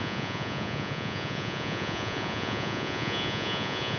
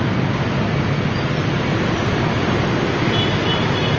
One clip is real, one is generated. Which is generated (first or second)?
first